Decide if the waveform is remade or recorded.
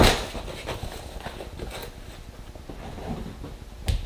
recorded